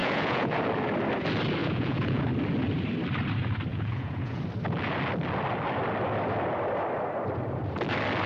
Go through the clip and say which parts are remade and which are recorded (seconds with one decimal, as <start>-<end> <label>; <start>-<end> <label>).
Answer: 0.0-0.6 remade; 0.6-1.6 recorded; 1.6-2.2 remade; 2.2-3.7 recorded; 3.7-4.4 remade; 4.4-8.3 recorded